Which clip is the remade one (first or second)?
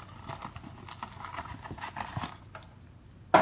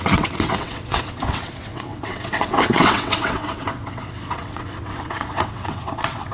second